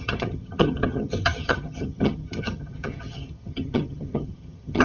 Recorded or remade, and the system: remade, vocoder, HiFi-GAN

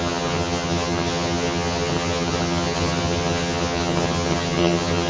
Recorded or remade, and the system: remade, vocoder, HiFi-GAN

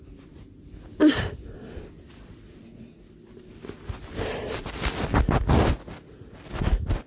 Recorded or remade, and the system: recorded